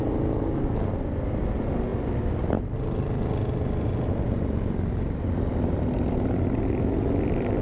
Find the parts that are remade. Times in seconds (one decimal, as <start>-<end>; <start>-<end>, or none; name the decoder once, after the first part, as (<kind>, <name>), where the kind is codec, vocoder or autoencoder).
none